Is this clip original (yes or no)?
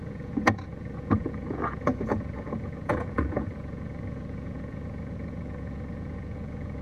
no